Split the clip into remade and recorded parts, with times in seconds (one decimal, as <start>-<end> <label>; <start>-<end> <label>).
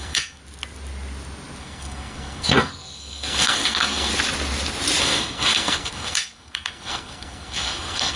0.0-0.4 remade; 0.4-1.6 recorded; 1.6-4.1 remade; 4.1-5.0 recorded; 5.0-8.2 remade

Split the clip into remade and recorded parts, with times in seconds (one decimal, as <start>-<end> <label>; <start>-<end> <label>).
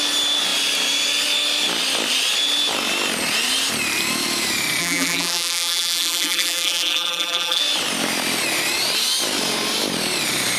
0.0-4.8 recorded; 4.8-7.6 remade; 7.6-10.6 recorded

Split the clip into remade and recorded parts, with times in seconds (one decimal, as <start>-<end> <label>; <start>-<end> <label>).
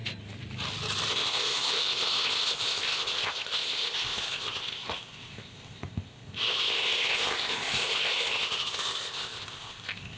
0.0-1.1 recorded; 1.1-10.2 remade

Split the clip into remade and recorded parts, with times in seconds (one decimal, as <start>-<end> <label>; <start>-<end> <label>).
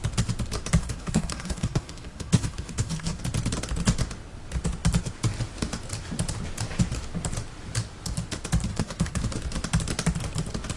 0.0-0.8 recorded; 0.8-3.2 remade; 3.2-8.7 recorded; 8.7-9.2 remade; 9.2-10.8 recorded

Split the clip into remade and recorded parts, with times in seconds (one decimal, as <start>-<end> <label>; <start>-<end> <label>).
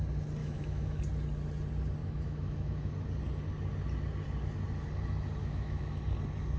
0.0-0.4 recorded; 0.4-1.0 remade; 1.0-2.0 recorded; 2.0-2.9 remade; 2.9-5.4 recorded; 5.4-6.0 remade; 6.0-6.6 recorded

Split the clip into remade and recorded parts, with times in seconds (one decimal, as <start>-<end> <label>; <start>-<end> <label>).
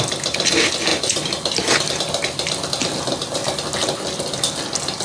0.0-5.0 recorded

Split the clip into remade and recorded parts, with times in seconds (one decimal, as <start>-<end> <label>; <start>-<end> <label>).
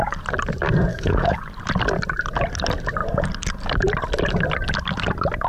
0.0-0.9 recorded; 0.9-1.4 remade; 1.4-5.5 recorded